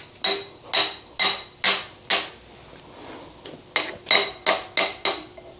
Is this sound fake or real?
real